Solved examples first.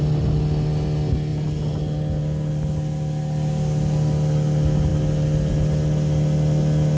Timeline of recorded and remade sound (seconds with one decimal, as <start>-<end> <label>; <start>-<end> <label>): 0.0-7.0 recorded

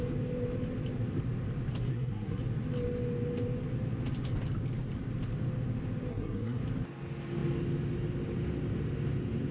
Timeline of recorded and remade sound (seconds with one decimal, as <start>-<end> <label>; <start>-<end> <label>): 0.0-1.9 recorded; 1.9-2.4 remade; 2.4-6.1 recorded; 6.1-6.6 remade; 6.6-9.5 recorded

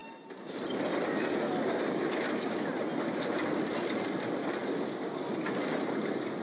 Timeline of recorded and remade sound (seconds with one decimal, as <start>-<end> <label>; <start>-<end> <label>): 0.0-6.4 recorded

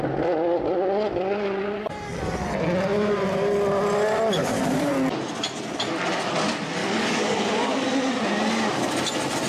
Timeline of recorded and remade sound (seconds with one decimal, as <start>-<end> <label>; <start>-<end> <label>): 0.0-4.4 recorded; 4.4-4.9 remade; 4.9-6.8 recorded; 6.8-7.8 remade; 7.8-9.5 recorded

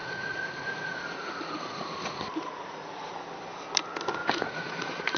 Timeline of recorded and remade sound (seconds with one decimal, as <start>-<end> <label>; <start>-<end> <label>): 0.0-3.1 remade; 3.1-4.2 recorded; 4.2-5.2 remade